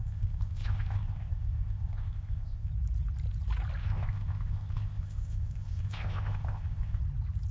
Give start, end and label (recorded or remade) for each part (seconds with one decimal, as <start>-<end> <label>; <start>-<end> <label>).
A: 0.0-2.7 remade; 2.7-3.8 recorded; 3.8-7.0 remade; 7.0-7.5 recorded